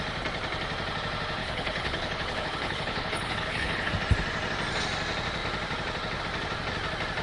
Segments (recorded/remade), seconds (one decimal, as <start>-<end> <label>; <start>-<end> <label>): 0.0-1.4 recorded; 1.4-3.9 remade; 3.9-7.2 recorded